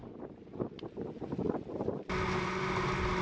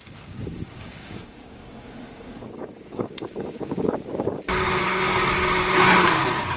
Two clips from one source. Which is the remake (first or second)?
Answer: second